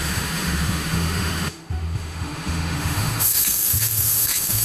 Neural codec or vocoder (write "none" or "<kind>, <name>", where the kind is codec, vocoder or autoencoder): autoencoder, DAC-VAE